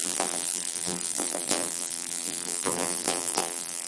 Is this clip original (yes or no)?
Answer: no